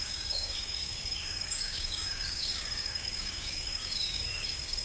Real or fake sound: fake